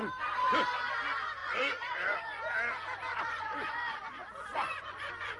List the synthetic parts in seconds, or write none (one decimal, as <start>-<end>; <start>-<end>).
1.4-2.4; 3.1-4.0; 4.5-5.4